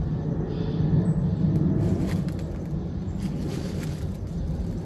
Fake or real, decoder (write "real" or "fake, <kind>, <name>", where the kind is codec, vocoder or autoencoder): real